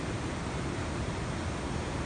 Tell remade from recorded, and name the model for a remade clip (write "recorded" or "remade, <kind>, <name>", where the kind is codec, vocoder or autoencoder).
remade, vocoder, BigVGAN v2